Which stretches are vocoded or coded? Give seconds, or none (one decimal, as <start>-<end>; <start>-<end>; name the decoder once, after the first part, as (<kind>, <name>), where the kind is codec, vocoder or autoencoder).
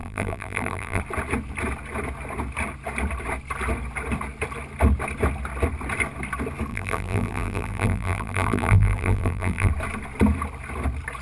0.0-1.0 (vocoder, BigVGAN v2); 6.7-9.7